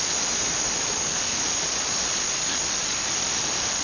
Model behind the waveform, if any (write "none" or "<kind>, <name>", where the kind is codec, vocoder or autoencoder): none